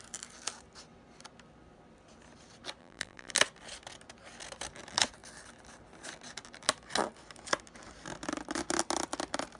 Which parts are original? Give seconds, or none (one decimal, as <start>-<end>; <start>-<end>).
0.0-2.8; 3.3-9.6